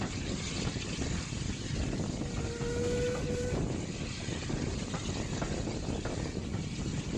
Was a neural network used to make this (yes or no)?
no